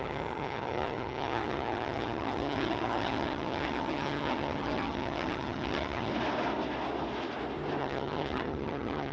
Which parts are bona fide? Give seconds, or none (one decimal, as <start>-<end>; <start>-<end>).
6.1-7.8